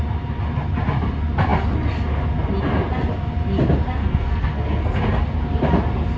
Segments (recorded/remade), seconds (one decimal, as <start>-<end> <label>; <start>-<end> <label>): 0.0-4.0 recorded; 4.0-5.0 remade; 5.0-6.2 recorded